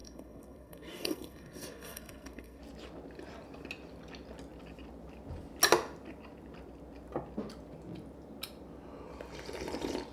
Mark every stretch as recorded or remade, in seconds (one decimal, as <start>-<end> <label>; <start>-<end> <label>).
0.0-2.6 remade; 2.6-10.1 recorded